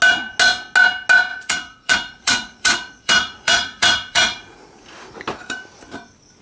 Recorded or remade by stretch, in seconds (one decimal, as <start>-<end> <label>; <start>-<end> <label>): 0.0-1.3 recorded; 1.3-5.1 remade; 5.1-6.4 recorded